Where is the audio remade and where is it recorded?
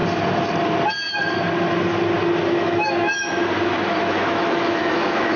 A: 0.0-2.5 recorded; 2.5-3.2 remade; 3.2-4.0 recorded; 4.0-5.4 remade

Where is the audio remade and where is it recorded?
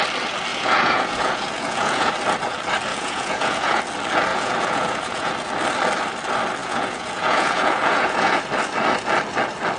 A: 0.0-0.5 recorded; 0.5-2.1 remade; 2.1-2.9 recorded; 2.9-3.8 remade; 3.8-4.3 recorded; 4.3-5.3 remade; 5.3-6.6 recorded; 6.6-8.4 remade; 8.4-9.8 recorded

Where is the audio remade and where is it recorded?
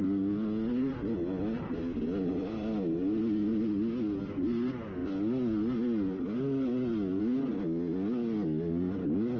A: 0.0-9.4 recorded